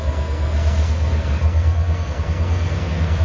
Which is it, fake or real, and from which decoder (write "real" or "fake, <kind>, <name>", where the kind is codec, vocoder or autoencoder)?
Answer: fake, codec, SNAC